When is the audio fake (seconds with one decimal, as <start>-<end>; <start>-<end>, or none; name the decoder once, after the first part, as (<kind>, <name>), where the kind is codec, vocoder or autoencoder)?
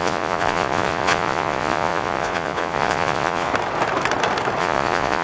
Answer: 0.0-3.5 (vocoder, Vocos); 4.6-5.2